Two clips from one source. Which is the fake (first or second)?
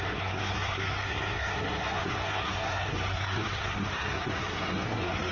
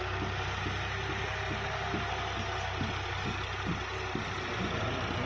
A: first